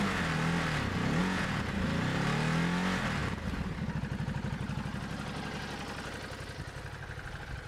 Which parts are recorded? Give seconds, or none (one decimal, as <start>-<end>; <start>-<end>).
0.0-1.2; 1.7-7.7